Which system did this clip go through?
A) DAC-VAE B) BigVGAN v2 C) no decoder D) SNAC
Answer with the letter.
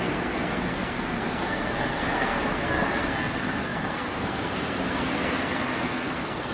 D